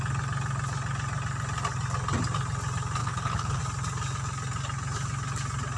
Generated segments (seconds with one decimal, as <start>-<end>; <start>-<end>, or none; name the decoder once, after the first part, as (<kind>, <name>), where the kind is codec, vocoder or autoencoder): 3.0-3.6 (codec, HILCodec)